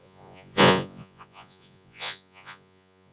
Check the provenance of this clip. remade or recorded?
remade